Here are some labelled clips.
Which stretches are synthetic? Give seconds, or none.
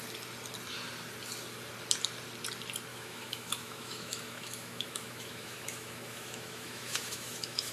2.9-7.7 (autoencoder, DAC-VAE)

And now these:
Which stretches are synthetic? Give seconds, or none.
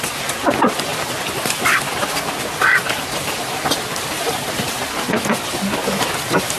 none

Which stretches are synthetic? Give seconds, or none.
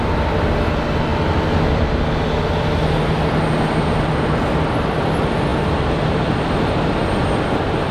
none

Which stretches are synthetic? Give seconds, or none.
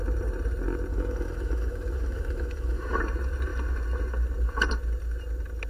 0.9-3.0 (autoencoder, DAC-VAE)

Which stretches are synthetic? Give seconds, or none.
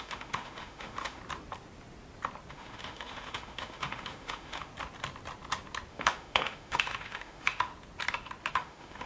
0.0-1.2 (autoencoder, DAC-VAE); 2.5-4.7; 5.9-7.7; 8.5-9.1